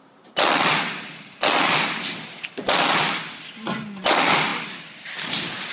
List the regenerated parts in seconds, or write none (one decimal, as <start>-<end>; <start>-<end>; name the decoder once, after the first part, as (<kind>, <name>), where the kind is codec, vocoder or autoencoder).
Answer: none